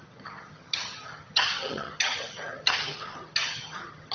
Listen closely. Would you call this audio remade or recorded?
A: remade